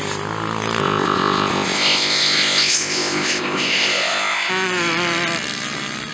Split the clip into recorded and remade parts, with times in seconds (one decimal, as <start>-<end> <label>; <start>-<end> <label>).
0.0-0.8 recorded; 0.8-4.5 remade; 4.5-6.1 recorded